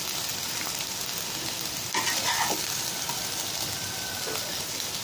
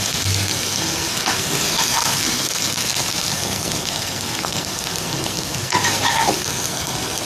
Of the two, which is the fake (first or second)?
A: second